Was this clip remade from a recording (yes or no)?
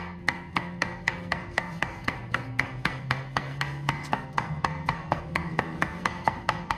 yes